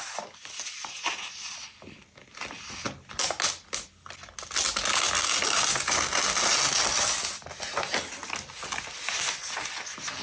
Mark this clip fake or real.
real